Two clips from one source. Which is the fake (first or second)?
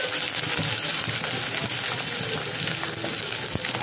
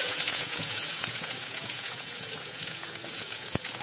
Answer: second